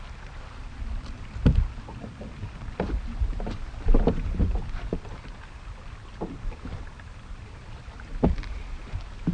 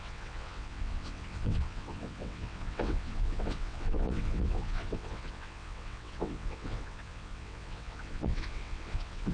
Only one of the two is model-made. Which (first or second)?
second